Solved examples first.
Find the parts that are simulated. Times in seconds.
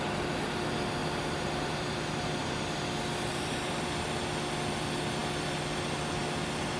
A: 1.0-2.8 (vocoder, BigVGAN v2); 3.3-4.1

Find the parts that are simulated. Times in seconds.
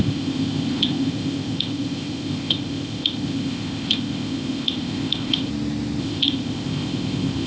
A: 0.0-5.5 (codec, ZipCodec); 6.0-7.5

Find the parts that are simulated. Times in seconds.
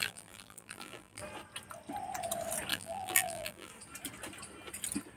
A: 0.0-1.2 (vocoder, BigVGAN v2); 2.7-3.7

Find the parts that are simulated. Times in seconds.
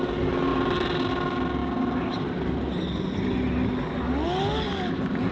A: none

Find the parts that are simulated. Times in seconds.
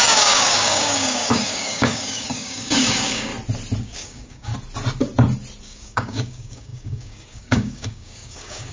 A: 0.0-3.3 (codec, DAC); 3.8-4.5; 5.6-8.7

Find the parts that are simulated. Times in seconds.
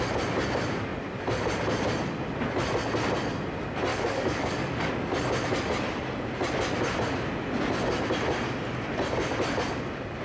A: 3.9-4.9 (codec, DAC)